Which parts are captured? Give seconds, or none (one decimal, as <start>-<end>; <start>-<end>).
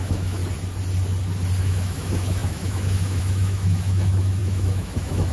0.4-1.6